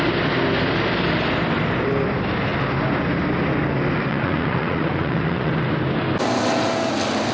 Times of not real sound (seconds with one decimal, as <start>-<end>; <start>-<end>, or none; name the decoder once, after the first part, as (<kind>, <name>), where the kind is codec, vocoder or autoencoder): 4.1-5.5 (vocoder, Vocos)